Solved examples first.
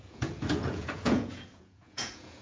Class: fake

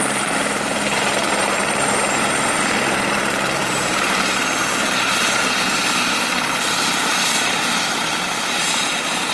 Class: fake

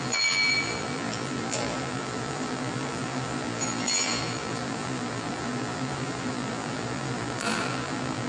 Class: fake